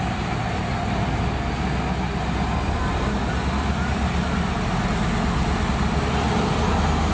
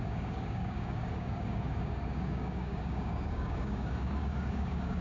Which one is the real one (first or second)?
first